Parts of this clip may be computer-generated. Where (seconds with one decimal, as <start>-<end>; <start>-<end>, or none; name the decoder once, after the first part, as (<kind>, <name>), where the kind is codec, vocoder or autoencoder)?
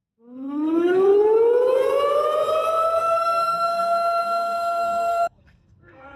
0.0-1.1 (codec, SNAC); 3.0-6.2